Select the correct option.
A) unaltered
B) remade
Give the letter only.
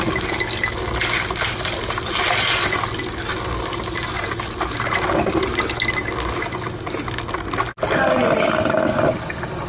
A